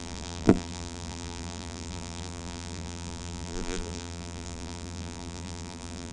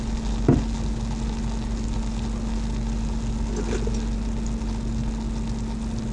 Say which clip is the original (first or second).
second